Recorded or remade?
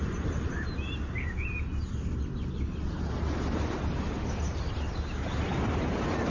recorded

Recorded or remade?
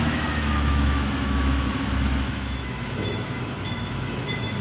remade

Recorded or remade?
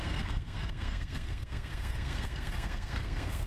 remade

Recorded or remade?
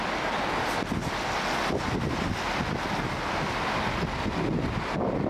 recorded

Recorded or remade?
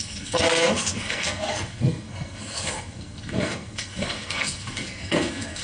remade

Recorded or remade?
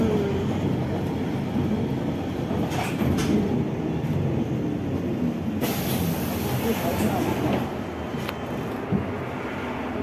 recorded